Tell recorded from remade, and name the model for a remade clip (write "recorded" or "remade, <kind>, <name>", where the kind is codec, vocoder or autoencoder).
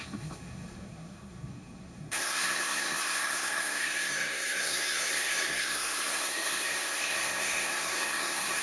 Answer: remade, codec, SNAC